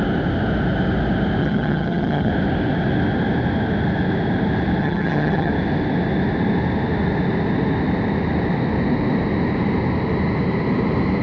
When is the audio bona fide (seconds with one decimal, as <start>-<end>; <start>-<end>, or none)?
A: 0.0-1.4; 2.3-4.8; 5.5-11.2